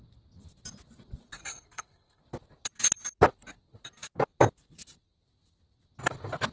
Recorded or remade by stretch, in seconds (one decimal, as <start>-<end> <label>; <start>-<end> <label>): 0.0-1.5 recorded; 1.5-2.2 remade; 2.2-6.5 recorded